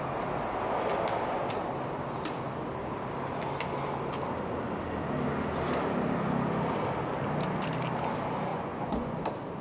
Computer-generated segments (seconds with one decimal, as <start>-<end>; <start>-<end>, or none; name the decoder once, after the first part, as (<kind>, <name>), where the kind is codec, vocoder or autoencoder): 8.5-9.2 (vocoder, Vocos)